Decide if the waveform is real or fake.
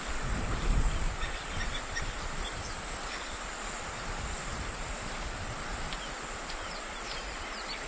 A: real